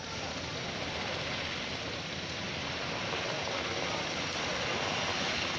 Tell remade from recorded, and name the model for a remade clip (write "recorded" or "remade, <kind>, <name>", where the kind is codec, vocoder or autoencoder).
recorded